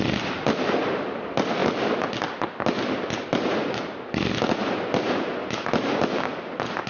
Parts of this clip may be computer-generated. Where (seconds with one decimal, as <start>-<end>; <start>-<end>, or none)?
none